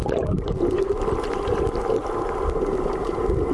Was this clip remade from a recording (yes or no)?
no